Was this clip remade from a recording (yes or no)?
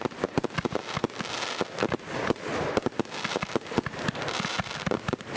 no